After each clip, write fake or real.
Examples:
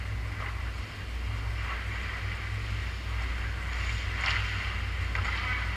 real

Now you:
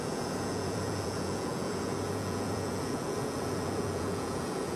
fake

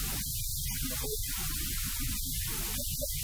real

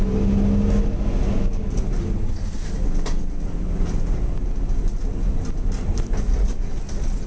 real